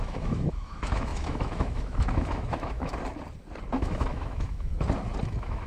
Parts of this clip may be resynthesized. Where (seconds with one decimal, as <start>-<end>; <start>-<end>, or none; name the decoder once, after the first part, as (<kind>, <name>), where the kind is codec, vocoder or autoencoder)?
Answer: 0.0-2.9 (autoencoder, DAC-VAE); 3.7-4.7; 5.2-5.7